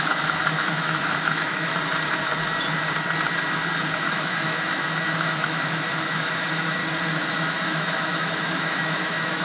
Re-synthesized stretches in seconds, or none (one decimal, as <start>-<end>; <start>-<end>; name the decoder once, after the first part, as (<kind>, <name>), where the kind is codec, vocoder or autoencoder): 0.0-1.7 (autoencoder, DAC-VAE); 4.0-6.8; 7.3-9.4